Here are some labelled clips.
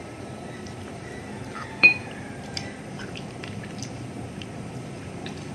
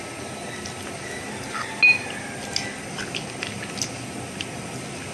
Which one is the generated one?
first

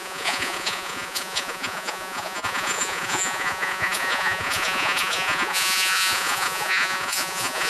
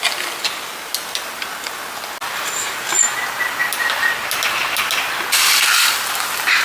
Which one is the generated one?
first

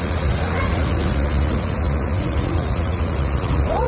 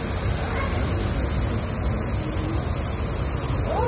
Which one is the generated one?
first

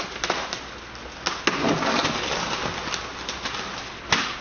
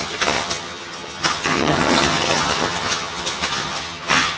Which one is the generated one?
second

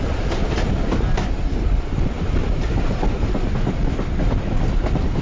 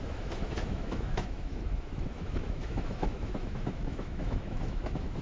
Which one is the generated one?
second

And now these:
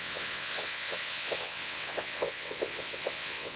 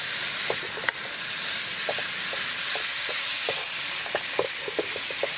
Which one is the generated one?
first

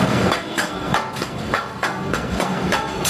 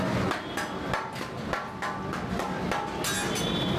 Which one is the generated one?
first